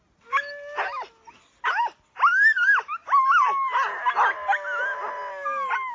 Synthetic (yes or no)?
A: no